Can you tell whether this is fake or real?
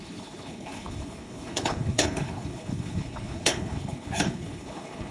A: fake